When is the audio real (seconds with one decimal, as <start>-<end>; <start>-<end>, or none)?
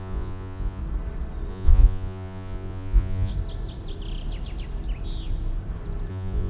0.8-1.5; 3.3-6.1